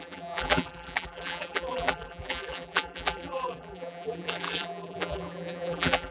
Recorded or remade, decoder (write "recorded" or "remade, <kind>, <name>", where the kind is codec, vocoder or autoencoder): remade, vocoder, BigVGAN v2